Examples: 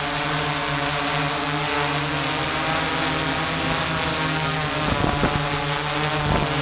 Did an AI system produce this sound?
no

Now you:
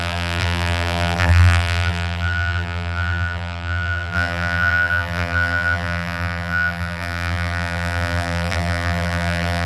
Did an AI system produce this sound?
yes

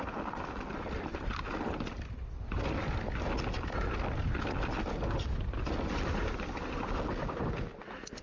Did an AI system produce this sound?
no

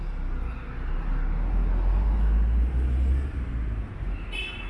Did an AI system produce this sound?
no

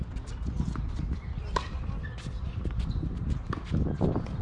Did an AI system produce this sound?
no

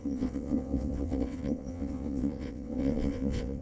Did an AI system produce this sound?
yes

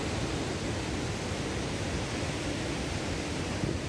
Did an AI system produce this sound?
no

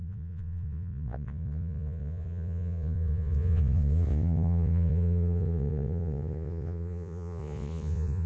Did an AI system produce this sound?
yes